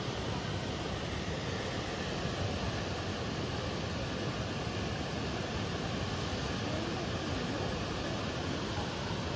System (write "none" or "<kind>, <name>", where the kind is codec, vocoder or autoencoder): none